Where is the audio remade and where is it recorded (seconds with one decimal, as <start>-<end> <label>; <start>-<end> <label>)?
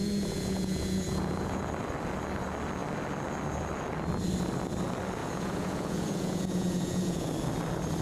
0.0-1.6 remade; 1.6-5.2 recorded; 5.2-7.3 remade; 7.3-8.0 recorded